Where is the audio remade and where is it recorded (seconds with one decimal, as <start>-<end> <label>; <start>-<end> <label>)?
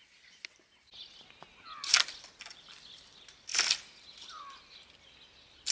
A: 0.0-5.7 recorded